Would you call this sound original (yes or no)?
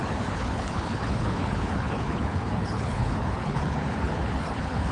no